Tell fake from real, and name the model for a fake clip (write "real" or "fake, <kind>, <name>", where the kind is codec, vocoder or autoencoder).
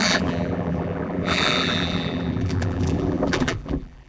fake, vocoder, BigVGAN v2